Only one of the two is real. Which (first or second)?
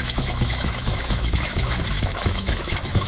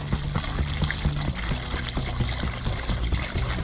second